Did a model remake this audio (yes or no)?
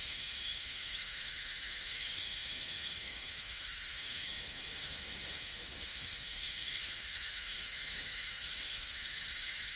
yes